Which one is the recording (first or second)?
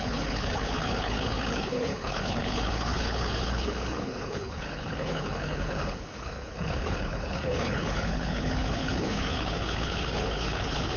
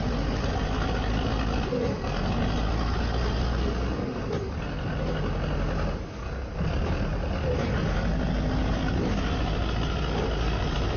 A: second